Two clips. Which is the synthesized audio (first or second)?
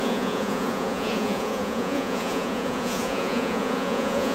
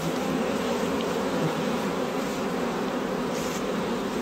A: first